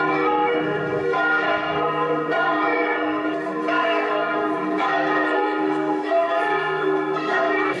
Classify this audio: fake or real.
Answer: fake